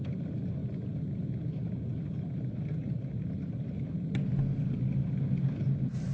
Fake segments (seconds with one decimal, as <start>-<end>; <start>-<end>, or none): none